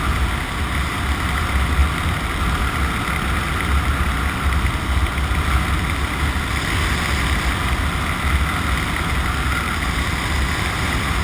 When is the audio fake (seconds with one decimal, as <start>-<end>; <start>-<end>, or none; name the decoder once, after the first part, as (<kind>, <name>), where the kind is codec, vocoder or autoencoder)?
none